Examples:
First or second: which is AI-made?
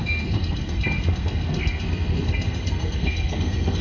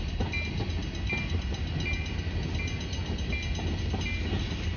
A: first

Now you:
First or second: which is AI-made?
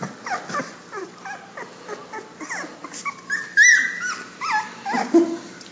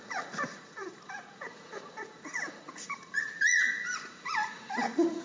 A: second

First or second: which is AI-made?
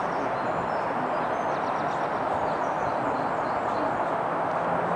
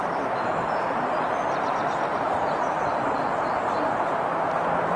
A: second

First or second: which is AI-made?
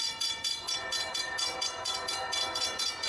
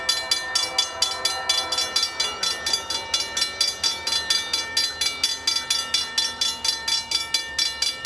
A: first